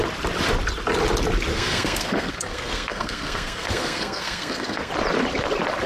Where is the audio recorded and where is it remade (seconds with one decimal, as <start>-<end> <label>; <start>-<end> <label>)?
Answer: 0.0-1.5 recorded; 1.5-4.9 remade; 4.9-5.9 recorded